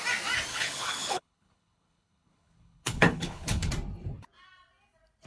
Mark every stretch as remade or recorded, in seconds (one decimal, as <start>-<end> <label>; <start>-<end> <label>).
0.0-0.5 recorded; 0.5-3.7 remade; 3.7-5.3 recorded